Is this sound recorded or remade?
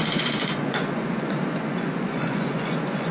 remade